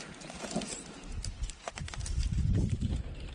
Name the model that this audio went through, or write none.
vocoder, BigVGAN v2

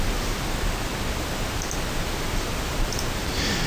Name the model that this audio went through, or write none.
none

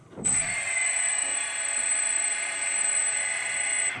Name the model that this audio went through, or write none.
vocoder, BigVGAN v2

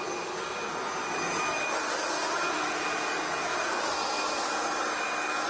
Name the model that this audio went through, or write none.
none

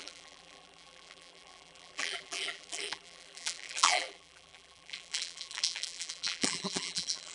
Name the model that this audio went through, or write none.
vocoder, BigVGAN v2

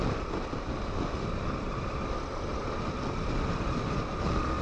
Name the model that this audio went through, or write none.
none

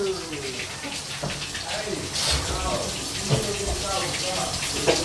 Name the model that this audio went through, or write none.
none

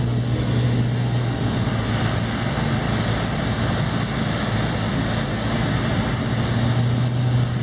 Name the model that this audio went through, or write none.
none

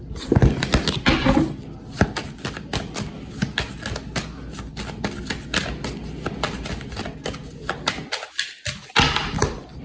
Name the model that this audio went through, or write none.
none